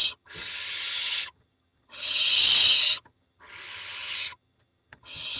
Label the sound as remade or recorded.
remade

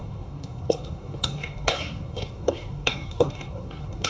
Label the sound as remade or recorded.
remade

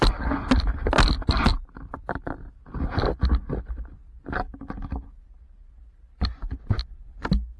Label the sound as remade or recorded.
recorded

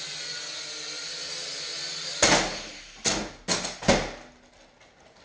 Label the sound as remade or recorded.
recorded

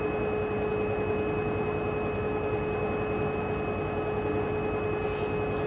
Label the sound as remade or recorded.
recorded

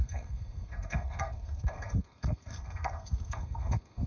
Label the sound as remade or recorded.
remade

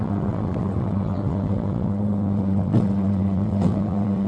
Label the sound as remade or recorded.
remade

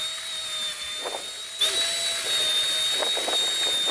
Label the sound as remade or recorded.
recorded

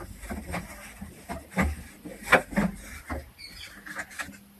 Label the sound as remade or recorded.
recorded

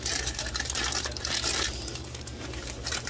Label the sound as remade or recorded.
remade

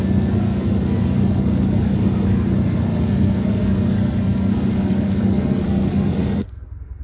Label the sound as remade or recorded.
remade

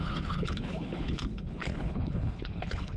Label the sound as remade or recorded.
remade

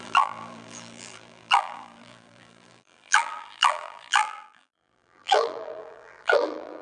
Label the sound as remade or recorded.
remade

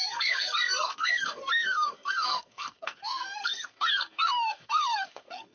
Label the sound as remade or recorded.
remade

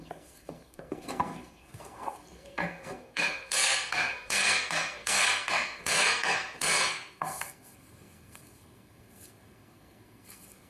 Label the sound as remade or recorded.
remade